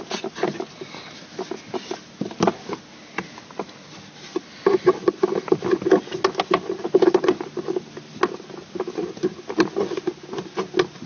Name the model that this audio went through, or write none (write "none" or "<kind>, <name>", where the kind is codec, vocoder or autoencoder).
none